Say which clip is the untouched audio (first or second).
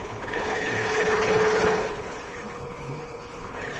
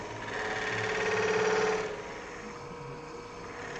second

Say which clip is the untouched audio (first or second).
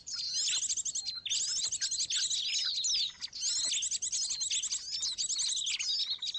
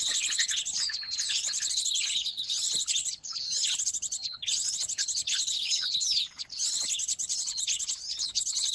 first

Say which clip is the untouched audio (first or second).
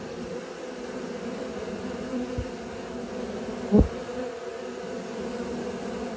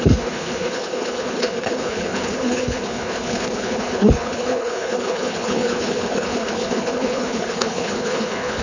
first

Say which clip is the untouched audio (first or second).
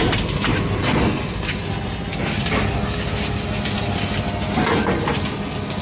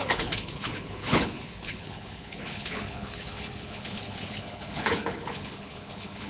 first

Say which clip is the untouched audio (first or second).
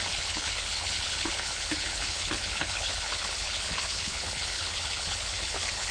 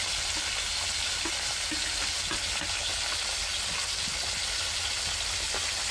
second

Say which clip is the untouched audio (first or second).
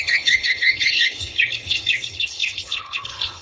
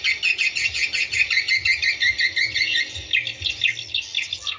second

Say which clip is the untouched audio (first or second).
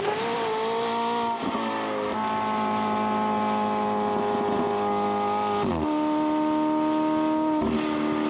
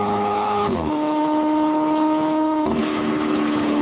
first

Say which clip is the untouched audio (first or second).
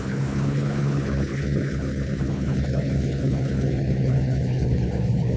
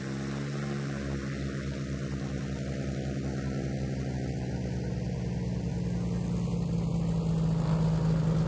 second